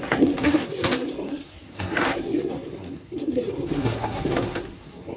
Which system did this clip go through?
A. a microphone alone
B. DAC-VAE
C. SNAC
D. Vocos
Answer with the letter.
C